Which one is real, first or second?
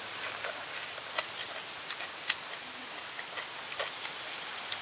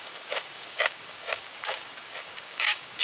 first